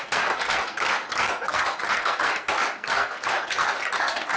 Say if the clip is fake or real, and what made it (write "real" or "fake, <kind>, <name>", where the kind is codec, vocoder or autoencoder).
fake, codec, SNAC